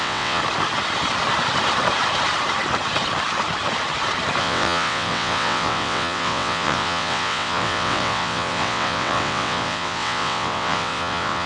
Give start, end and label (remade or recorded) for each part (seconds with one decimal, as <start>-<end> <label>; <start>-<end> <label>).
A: 0.0-0.4 remade; 0.4-4.4 recorded; 4.4-11.5 remade